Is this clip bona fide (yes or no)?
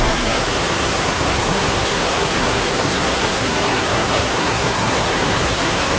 no